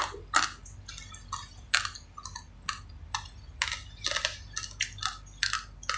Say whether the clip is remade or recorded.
recorded